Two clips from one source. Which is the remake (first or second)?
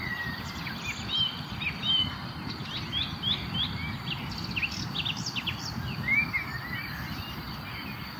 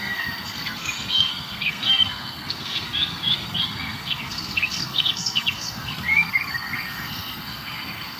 second